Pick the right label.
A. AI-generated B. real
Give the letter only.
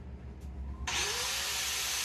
B